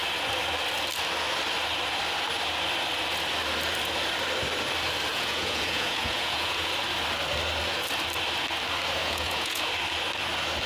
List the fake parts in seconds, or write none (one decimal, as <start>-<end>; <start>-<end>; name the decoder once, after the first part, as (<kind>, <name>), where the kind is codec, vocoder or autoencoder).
5.1-6.7 (vocoder, Vocos); 9.0-9.6